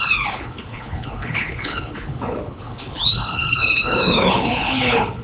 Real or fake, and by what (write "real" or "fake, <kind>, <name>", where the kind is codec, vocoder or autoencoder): fake, codec, HILCodec